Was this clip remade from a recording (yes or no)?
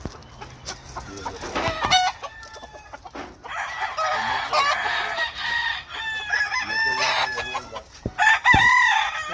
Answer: no